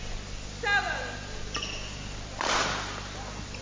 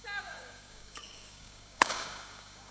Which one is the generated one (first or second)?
second